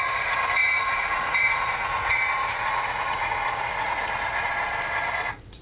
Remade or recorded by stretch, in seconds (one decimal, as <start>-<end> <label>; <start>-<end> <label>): 0.0-4.5 remade; 4.5-5.1 recorded; 5.1-5.6 remade